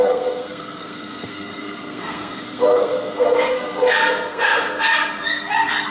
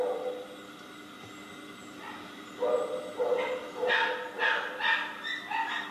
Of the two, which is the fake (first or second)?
first